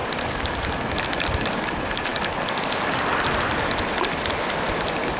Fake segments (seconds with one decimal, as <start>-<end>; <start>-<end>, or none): none